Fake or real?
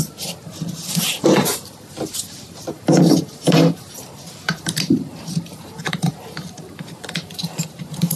fake